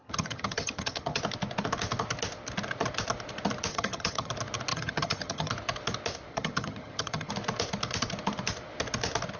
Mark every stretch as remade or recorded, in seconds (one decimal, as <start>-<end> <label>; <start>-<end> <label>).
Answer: 0.0-1.2 remade; 1.2-3.7 recorded; 3.7-4.3 remade; 4.3-4.7 recorded; 4.7-5.5 remade; 5.5-6.3 recorded; 6.3-7.3 remade; 7.3-9.4 recorded